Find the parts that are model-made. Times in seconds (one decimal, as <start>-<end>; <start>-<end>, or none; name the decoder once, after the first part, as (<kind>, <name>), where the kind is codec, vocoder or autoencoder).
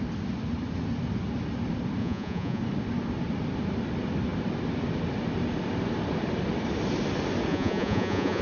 2.0-2.6 (vocoder, Vocos); 7.5-8.4